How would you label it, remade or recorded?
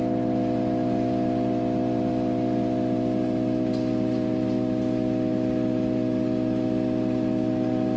recorded